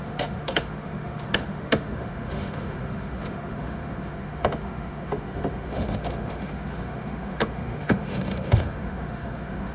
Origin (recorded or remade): remade